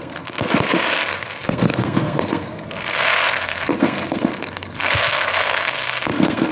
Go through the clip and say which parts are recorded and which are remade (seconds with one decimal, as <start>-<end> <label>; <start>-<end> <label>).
0.0-6.5 remade